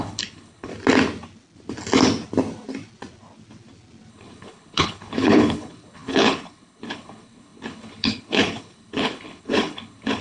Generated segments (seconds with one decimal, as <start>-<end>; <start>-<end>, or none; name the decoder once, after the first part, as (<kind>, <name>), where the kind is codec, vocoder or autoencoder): 0.0-0.7 (codec, HILCodec); 4.1-10.2